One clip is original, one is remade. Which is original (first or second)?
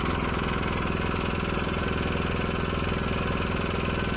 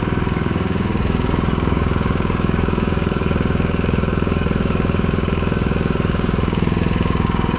first